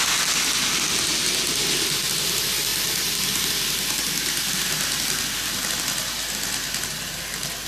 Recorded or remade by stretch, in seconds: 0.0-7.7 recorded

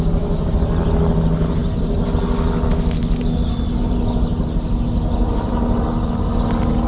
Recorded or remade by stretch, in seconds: 0.0-6.9 recorded

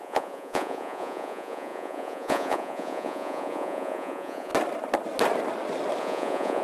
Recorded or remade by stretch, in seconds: 0.0-4.5 remade; 4.5-6.0 recorded; 6.0-6.6 remade

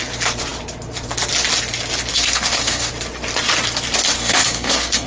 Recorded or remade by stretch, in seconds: 0.0-2.1 recorded; 2.1-2.9 remade; 2.9-4.2 recorded; 4.2-5.1 remade

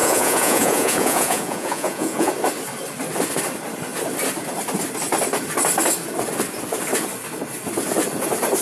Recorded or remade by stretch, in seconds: 0.0-2.3 remade; 2.3-8.6 recorded

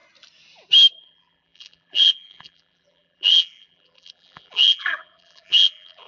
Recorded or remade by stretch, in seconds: 0.0-1.0 recorded; 1.0-6.1 remade